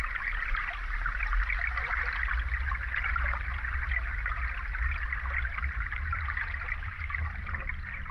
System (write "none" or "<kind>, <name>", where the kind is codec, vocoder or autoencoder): none